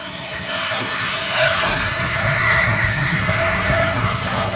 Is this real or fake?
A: fake